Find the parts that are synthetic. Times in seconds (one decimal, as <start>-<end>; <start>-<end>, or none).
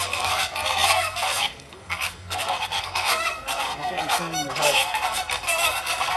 0.0-6.2